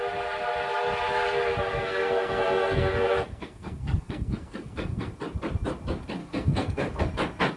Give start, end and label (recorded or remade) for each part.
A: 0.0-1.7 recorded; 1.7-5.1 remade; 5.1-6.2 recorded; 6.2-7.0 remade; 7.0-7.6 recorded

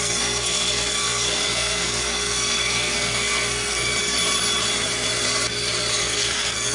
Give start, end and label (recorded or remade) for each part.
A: 0.0-3.9 remade; 3.9-6.0 recorded; 6.0-6.7 remade